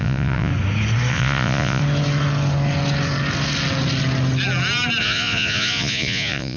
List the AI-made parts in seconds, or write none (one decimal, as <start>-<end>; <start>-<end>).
0.0-0.5; 1.1-1.8; 5.0-6.6